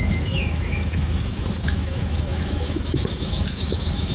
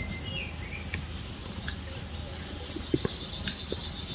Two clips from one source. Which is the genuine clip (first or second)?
second